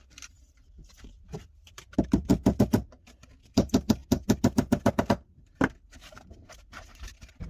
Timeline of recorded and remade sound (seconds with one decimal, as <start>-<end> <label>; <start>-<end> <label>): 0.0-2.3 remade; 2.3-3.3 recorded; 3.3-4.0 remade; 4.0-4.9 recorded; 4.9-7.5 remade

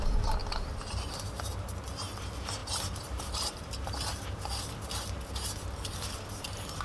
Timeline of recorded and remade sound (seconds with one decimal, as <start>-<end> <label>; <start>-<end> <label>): 0.0-0.4 recorded; 0.4-1.6 remade; 1.6-2.6 recorded; 2.6-4.8 remade; 4.8-6.8 recorded

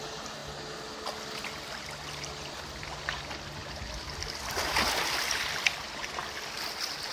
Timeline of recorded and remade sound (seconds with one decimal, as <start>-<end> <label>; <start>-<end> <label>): 0.0-7.1 recorded